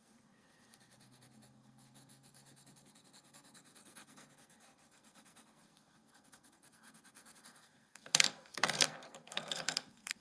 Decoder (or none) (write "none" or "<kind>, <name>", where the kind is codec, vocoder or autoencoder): codec, SNAC